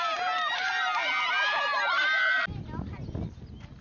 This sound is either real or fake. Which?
real